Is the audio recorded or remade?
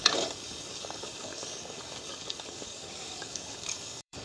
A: remade